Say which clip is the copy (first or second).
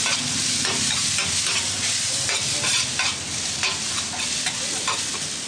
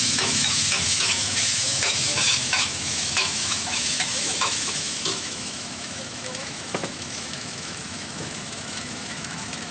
second